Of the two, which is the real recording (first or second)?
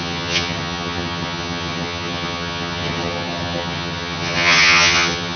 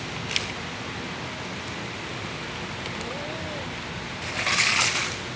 second